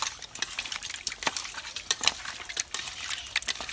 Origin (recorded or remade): recorded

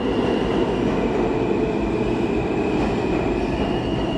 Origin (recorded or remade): recorded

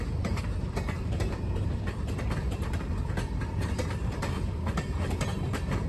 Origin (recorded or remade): remade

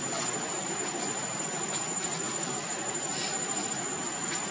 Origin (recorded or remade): remade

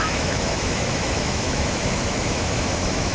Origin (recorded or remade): remade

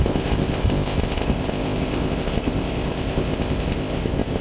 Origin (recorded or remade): remade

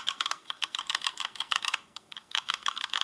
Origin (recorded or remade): remade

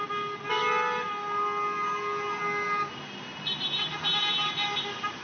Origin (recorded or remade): recorded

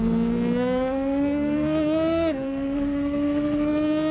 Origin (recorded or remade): remade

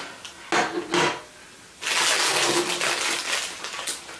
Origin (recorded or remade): recorded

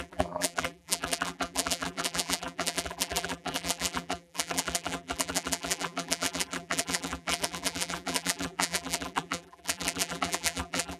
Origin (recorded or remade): remade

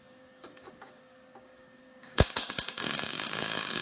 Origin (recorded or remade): remade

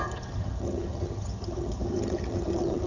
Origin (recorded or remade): remade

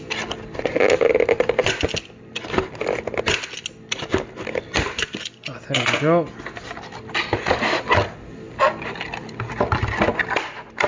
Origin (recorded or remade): recorded